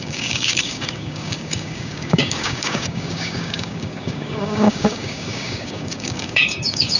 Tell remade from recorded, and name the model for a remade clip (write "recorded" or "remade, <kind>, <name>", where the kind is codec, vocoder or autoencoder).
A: remade, codec, DAC